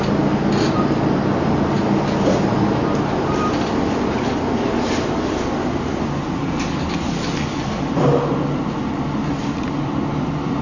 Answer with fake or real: real